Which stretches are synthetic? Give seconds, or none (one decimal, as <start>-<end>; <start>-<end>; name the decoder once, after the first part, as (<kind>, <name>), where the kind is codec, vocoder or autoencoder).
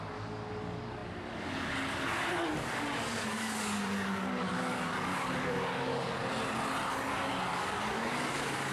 0.0-6.2 (codec, DAC); 7.1-8.7